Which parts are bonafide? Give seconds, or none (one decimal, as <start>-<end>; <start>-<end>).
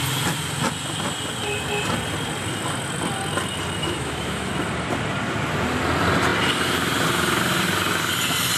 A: 0.0-3.8; 4.5-8.6